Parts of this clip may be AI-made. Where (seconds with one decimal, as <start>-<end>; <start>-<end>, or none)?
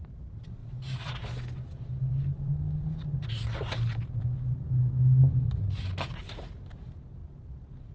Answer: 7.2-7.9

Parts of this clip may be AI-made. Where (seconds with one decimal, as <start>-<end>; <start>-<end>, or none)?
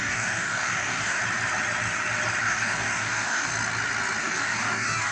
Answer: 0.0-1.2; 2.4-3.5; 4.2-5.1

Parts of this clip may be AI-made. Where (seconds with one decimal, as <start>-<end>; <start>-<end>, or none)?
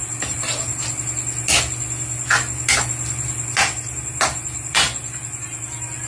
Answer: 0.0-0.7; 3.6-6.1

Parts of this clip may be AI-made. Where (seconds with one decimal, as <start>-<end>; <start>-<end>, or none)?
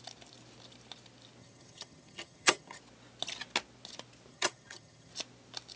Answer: 1.4-2.8; 4.3-5.1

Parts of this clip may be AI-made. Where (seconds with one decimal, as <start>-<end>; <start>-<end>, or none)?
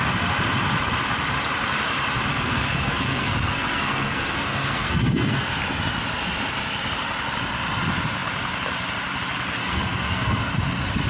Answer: 2.3-5.6; 9.6-10.5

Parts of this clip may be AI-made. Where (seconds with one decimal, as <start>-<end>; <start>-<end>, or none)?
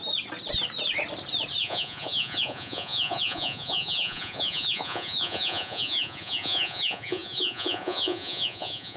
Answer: 1.6-9.0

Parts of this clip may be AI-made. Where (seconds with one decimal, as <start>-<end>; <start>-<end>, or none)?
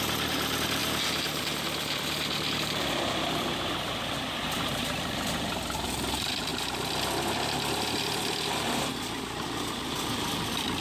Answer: 0.0-0.8; 1.4-6.5; 8.5-10.8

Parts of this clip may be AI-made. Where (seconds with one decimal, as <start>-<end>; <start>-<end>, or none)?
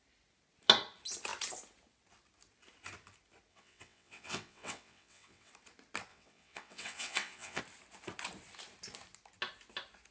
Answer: 3.5-5.5; 6.1-7.6